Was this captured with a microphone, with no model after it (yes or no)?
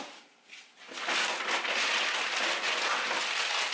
yes